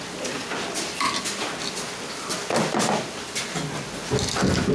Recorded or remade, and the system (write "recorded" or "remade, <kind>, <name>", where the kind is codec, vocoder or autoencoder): recorded